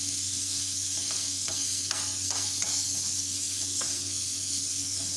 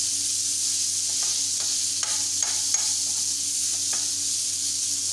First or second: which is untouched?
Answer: second